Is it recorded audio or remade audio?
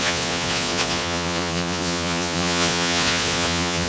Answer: remade